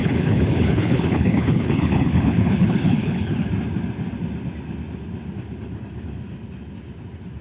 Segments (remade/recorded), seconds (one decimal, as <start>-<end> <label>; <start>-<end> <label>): 0.0-3.5 remade; 3.5-7.4 recorded